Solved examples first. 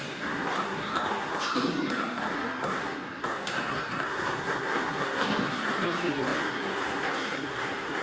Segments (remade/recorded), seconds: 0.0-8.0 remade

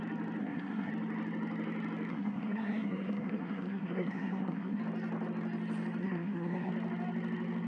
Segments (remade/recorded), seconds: 0.0-0.4 recorded; 0.4-0.9 remade; 0.9-2.1 recorded; 2.1-4.8 remade; 4.8-6.0 recorded; 6.0-6.7 remade; 6.7-7.7 recorded

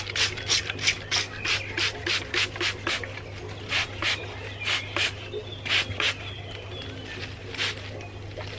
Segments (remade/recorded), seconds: 0.0-8.6 recorded

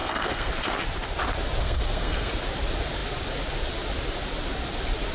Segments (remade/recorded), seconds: 0.0-0.5 remade; 0.5-1.6 recorded; 1.6-2.3 remade; 2.3-5.1 recorded

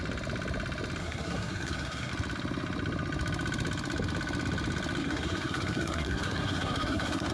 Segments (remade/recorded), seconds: 0.0-1.0 recorded; 1.0-2.1 remade; 2.1-5.0 recorded; 5.0-7.3 remade